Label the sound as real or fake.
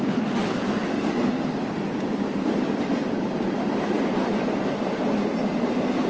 fake